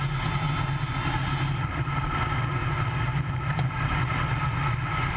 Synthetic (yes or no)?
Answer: no